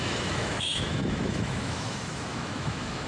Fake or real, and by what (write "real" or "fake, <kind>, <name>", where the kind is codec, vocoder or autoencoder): fake, autoencoder, DAC-VAE